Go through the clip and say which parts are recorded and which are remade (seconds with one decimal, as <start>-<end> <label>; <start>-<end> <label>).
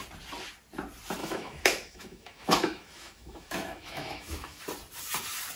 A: 0.0-1.2 recorded; 1.2-4.6 remade; 4.6-5.6 recorded